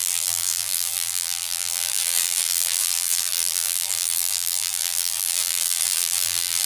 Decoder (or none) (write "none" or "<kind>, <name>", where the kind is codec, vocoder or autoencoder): vocoder, BigVGAN v2